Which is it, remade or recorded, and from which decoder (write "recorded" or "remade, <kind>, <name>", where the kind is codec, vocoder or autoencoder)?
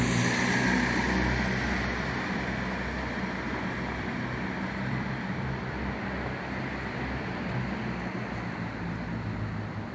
remade, vocoder, BigVGAN v2